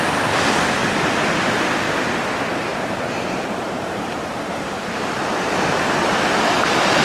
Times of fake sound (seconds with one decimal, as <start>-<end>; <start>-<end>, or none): 2.7-5.5